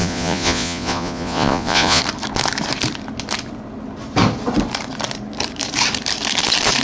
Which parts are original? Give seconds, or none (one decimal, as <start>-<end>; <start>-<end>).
2.0-6.8